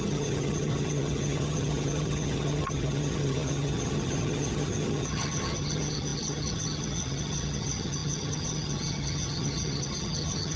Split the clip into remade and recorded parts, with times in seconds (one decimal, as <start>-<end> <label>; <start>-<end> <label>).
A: 0.0-10.6 remade